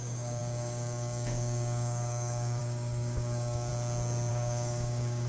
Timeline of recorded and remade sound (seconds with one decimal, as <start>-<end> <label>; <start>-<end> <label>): 0.0-3.7 remade; 3.7-4.3 recorded; 4.3-5.3 remade